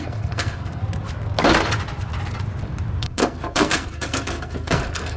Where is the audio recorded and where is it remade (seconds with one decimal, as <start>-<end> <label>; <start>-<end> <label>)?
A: 0.0-0.8 remade; 0.8-3.0 recorded; 3.0-5.2 remade